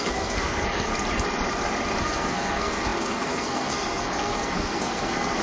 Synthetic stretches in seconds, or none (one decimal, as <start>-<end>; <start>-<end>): 0.0-0.9; 2.0-5.4